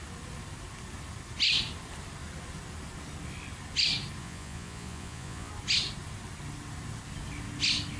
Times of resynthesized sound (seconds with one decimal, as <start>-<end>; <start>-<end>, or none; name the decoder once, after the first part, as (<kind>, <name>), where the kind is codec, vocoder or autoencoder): 4.2-5.5 (vocoder, Vocos)